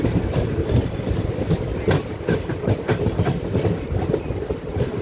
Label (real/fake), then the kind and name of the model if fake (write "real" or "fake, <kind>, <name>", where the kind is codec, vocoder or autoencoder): real